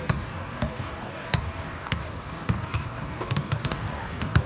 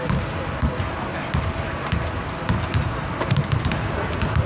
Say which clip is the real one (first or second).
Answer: second